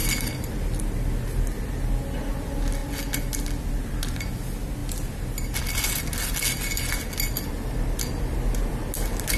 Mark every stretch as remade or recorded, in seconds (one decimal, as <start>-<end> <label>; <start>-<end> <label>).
0.0-9.4 recorded